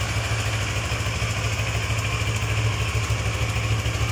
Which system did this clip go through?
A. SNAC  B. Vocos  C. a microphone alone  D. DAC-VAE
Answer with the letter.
C